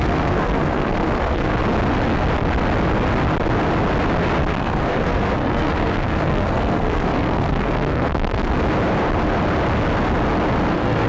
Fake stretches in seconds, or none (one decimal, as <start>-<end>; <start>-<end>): 0.0-1.6; 4.4-8.5; 10.7-11.1